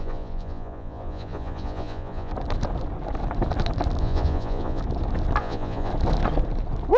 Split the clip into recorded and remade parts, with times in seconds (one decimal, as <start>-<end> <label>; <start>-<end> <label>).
0.0-2.3 remade; 2.3-4.0 recorded; 4.0-4.8 remade; 4.8-5.4 recorded; 5.4-5.9 remade; 5.9-7.0 recorded